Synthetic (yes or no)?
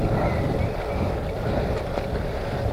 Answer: no